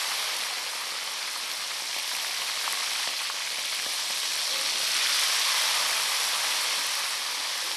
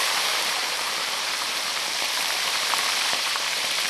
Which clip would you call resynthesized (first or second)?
second